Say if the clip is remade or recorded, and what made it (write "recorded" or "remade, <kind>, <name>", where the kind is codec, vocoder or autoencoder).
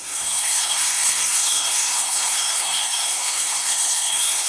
remade, codec, SNAC